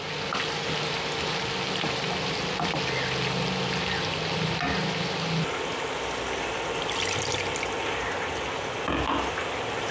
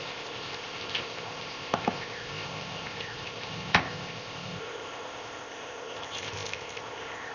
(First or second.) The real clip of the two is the first